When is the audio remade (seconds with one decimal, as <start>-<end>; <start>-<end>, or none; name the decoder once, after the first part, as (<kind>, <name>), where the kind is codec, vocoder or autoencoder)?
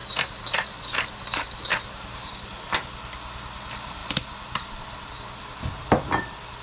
0.0-2.3 (vocoder, BigVGAN v2); 4.0-5.1